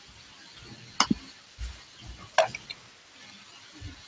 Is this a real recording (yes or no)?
yes